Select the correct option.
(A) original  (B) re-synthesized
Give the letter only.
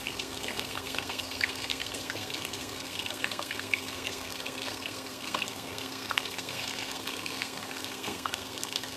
B